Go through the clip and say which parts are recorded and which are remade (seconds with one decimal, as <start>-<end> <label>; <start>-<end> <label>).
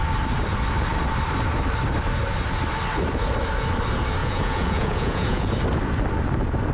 0.0-4.2 recorded; 4.2-5.5 remade; 5.5-6.7 recorded